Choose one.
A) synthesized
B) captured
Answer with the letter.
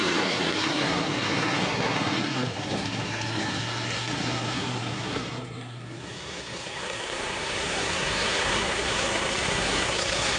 A